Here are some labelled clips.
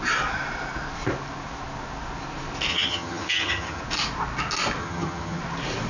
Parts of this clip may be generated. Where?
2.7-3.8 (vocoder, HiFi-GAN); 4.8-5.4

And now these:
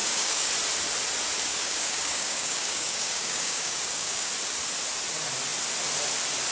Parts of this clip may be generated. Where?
0.0-0.5 (codec, DAC); 1.5-4.3

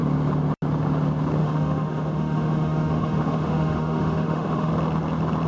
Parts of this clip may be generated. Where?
1.4-4.7 (autoencoder, DAC-VAE)

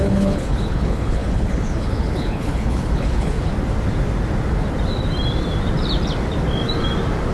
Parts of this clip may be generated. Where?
0.0-3.5 (codec, HILCodec)

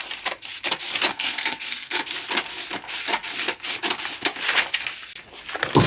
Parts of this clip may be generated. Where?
1.1-2.0 (codec, SNAC)